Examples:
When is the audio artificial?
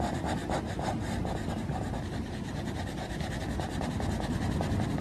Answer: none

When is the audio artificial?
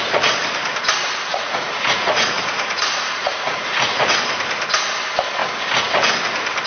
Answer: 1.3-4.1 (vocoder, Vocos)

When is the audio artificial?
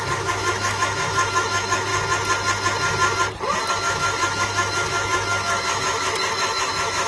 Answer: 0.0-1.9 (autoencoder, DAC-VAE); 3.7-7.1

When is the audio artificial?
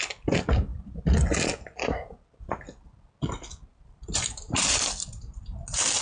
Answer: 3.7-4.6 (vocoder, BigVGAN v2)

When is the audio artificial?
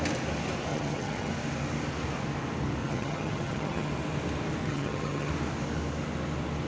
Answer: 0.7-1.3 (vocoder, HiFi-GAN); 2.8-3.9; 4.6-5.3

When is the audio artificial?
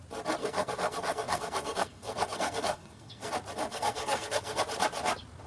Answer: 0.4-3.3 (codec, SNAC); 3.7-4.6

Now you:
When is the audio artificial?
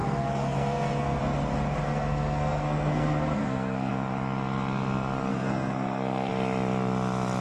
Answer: 0.0-1.2 (codec, SNAC); 1.8-3.9; 5.3-6.3